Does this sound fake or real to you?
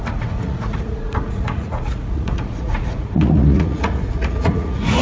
fake